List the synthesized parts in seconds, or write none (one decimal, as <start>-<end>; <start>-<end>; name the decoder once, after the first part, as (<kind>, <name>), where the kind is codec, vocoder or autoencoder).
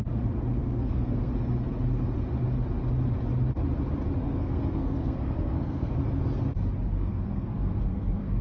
0.6-1.3 (codec, SNAC); 4.2-5.9; 6.9-8.4